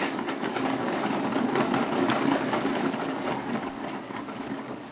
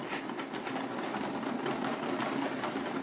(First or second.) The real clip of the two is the second